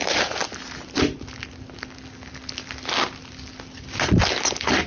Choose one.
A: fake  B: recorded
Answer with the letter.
B